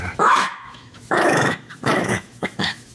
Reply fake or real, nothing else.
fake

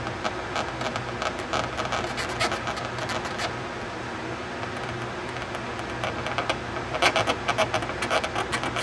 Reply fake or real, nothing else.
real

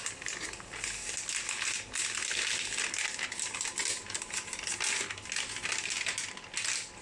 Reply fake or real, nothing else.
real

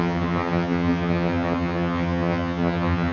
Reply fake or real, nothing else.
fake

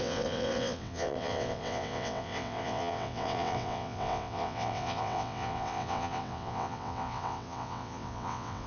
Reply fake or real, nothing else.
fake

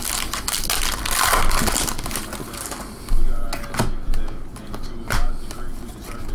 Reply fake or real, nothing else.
real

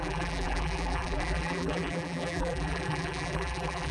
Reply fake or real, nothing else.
fake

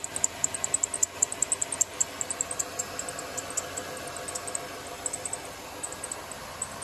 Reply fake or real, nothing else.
real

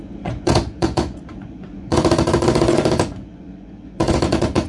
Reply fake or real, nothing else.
fake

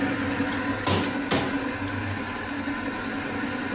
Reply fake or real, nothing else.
real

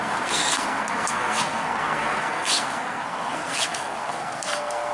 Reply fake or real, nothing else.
fake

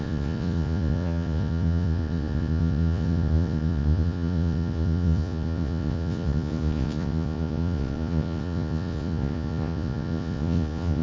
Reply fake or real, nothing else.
fake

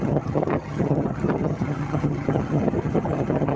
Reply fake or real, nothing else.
fake